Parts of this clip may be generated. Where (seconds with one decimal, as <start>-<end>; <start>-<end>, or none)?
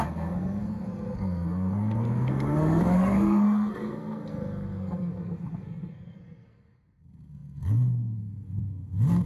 0.0-9.3